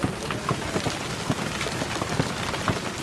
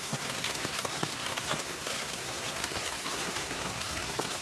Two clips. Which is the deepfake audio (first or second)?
second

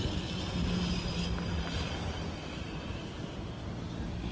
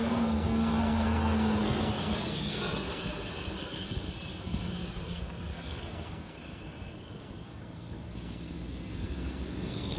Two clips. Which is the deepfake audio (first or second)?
second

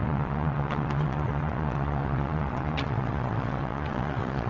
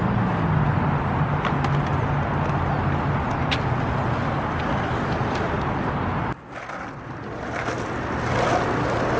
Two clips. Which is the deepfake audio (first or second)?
first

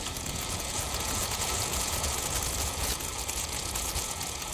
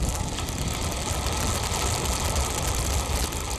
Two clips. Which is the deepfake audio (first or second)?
first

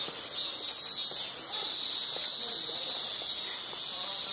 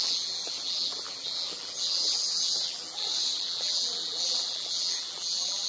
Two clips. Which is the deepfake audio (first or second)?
second